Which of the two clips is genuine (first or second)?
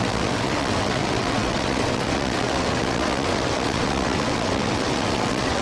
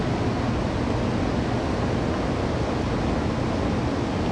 second